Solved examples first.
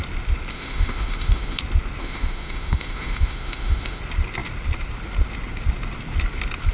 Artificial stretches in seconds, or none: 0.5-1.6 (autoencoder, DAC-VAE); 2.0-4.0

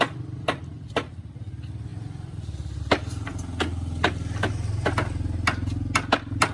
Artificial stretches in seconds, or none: none